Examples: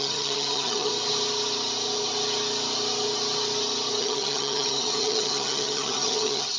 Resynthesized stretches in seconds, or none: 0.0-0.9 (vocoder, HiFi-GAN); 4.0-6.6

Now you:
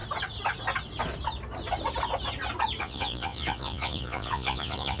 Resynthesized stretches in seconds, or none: 2.8-5.0 (vocoder, Vocos)

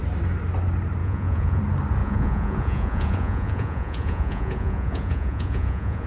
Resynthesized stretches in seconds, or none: 1.0-1.6 (vocoder, Vocos); 2.0-6.1

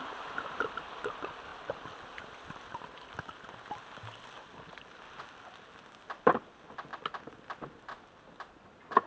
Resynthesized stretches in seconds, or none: none